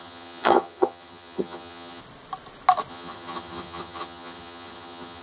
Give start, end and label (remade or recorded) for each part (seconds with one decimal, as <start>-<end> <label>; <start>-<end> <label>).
0.0-2.0 remade; 2.0-2.9 recorded; 2.9-5.2 remade